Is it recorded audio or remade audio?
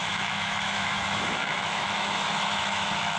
remade